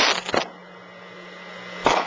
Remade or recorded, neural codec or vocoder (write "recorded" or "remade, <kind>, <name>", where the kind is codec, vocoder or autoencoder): recorded